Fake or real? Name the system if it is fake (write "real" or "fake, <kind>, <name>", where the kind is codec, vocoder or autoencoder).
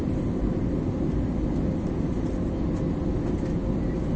real